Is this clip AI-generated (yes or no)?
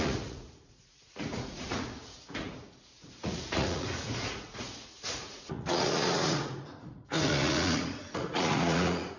yes